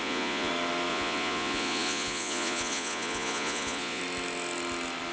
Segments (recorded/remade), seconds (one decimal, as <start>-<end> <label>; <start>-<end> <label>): 0.0-0.5 remade; 0.5-0.9 recorded; 0.9-4.0 remade; 4.0-5.1 recorded

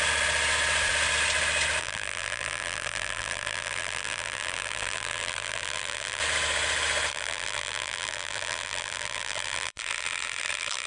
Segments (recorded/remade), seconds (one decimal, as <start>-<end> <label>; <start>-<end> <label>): 0.0-1.8 recorded; 1.8-6.2 remade; 6.2-7.1 recorded; 7.1-10.9 remade

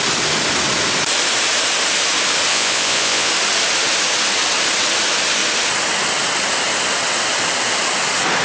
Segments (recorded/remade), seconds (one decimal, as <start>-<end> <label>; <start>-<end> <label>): 0.0-2.5 recorded; 2.5-3.3 remade; 3.3-8.4 recorded

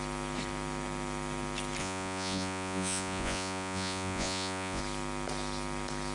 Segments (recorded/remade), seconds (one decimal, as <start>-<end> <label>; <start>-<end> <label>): 0.0-1.8 recorded; 1.8-4.8 remade; 4.8-6.1 recorded

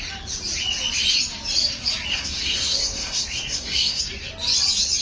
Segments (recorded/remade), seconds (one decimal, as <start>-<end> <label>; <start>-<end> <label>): 0.0-2.1 recorded; 2.1-4.0 remade; 4.0-5.0 recorded

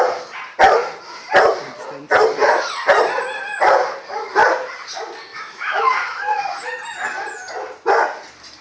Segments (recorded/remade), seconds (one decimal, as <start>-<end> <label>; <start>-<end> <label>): 0.0-5.3 recorded; 5.3-6.4 remade; 6.4-8.6 recorded

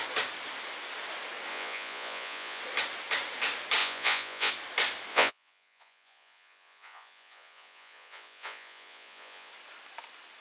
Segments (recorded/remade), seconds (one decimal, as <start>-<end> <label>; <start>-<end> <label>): 0.0-1.5 recorded; 1.5-2.6 remade; 2.6-3.8 recorded; 3.8-4.5 remade; 4.5-5.1 recorded; 5.1-9.5 remade; 9.5-10.4 recorded

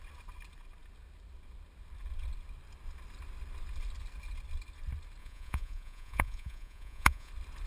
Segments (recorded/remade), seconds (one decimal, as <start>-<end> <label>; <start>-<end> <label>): 0.0-5.2 recorded; 5.2-7.3 remade; 7.3-7.7 recorded